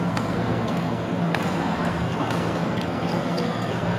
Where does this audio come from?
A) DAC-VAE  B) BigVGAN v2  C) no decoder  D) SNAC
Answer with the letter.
D